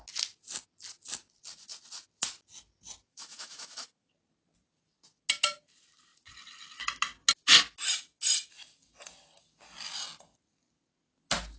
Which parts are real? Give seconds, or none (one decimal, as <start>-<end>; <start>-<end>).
0.0-3.1; 4.1-11.6